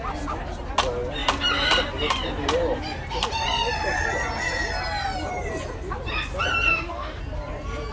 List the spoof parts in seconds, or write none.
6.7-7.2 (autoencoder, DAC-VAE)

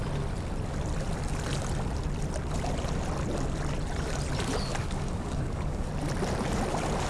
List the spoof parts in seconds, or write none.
4.8-5.9 (codec, DAC)

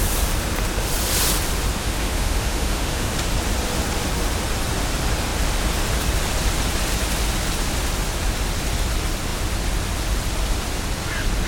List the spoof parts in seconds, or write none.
1.8-3.1 (autoencoder, DAC-VAE)

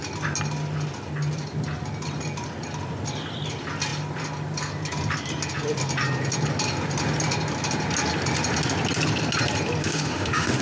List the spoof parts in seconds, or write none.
9.8-10.6 (autoencoder, DAC-VAE)

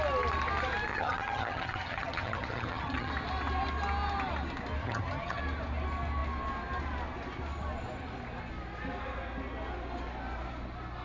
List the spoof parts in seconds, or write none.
0.9-3.1 (vocoder, HiFi-GAN); 4.8-5.4

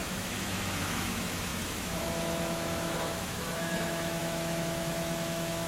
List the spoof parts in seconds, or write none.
0.0-5.7 (autoencoder, DAC-VAE)

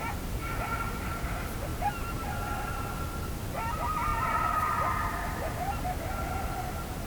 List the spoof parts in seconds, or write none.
none